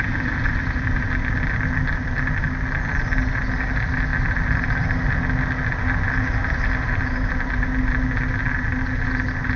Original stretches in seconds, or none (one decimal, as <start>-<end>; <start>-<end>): 0.0-9.6